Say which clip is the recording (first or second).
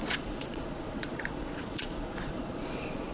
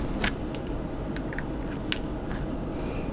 second